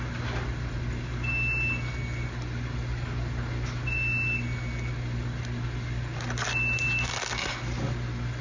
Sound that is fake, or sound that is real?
real